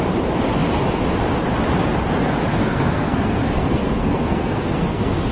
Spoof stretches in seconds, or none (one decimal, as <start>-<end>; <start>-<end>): 2.6-5.3